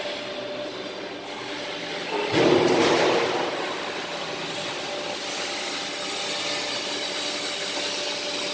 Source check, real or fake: real